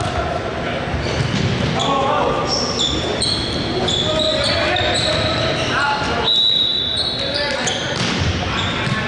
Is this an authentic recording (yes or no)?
yes